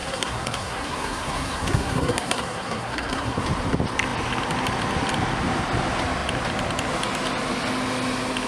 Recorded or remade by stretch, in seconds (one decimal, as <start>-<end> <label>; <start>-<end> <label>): 0.0-3.4 remade; 3.4-8.5 recorded